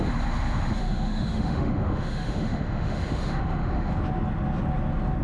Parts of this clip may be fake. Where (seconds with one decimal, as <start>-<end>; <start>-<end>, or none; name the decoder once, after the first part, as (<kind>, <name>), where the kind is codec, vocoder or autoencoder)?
0.8-3.9 (autoencoder, DAC-VAE)